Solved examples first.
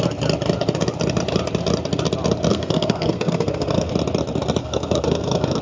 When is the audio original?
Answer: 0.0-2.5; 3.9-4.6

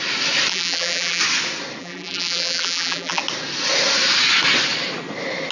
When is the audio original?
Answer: 0.0-0.5; 1.2-1.8; 3.2-5.5

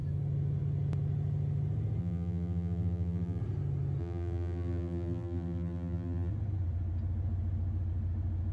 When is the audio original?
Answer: 0.0-2.0; 3.4-4.0; 6.3-8.5

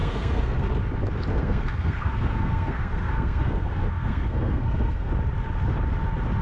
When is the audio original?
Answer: 0.7-1.3; 5.1-6.4

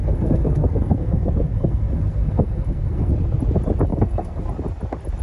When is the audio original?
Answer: 3.1-3.9; 4.4-5.2

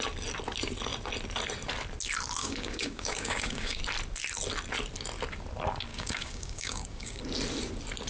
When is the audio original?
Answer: 0.0-2.4; 3.8-5.9; 7.2-8.1